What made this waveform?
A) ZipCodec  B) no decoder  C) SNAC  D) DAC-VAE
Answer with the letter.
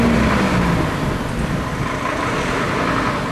B